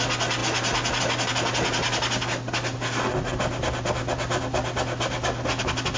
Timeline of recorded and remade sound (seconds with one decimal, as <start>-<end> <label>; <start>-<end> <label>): 0.0-6.0 recorded